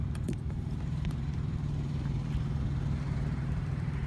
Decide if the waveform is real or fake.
fake